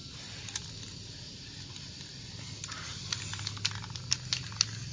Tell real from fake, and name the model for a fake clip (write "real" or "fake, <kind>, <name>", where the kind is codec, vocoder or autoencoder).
real